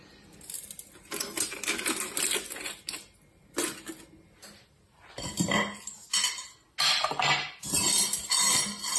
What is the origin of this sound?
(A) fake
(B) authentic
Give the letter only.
B